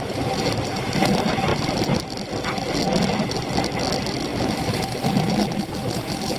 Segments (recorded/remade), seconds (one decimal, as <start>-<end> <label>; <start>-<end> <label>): 0.0-6.4 recorded